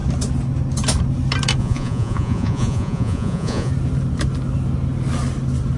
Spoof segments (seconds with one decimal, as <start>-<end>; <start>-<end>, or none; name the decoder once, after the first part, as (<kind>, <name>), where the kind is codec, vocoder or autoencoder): 1.6-3.7 (vocoder, Vocos)